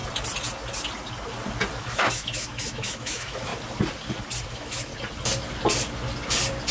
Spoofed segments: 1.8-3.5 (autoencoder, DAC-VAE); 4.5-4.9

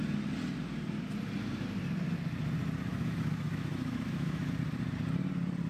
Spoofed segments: 2.9-4.4 (autoencoder, DAC-VAE)